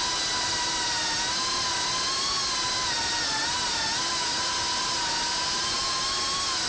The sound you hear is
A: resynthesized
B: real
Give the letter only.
B